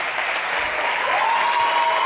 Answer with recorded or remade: recorded